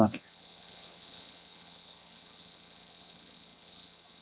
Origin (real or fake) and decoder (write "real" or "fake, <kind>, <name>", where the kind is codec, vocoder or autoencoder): fake, vocoder, WaveNeXt